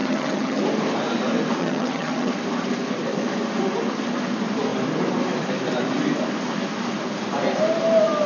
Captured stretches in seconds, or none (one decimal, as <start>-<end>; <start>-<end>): 0.6-1.6; 2.3-8.3